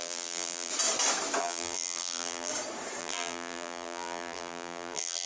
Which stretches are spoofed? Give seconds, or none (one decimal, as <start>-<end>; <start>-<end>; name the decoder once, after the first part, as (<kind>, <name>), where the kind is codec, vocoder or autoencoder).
0.0-0.7 (vocoder, BigVGAN v2); 1.4-2.5; 3.0-5.3